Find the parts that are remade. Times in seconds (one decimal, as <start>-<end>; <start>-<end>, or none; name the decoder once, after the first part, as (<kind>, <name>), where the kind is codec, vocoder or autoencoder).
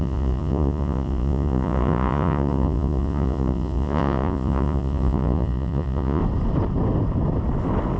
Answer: 0.0-6.2 (vocoder, Vocos)